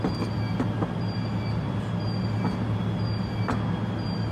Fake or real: real